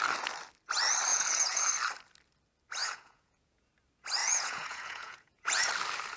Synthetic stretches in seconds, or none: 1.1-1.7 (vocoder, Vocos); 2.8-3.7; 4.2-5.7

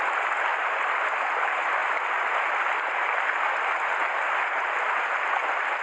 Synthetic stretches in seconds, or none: none

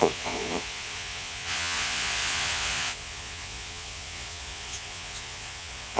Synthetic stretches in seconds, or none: 0.0-6.0 (vocoder, Vocos)

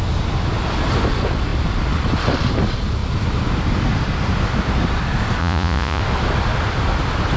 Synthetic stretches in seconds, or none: 5.4-6.0 (vocoder, Vocos)

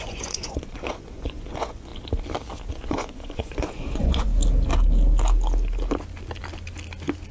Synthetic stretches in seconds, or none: 0.0-1.9 (vocoder, Vocos); 2.7-4.3

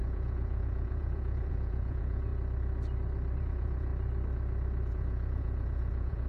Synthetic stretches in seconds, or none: 0.0-2.3 (vocoder, Vocos); 3.4-3.9; 4.9-6.3

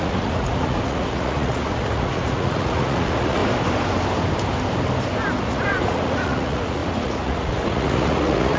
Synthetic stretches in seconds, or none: 0.0-3.4 (vocoder, Vocos); 5.4-8.6

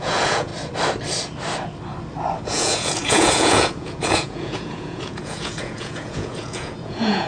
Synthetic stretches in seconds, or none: 0.0-0.5 (vocoder, Vocos); 2.4-7.3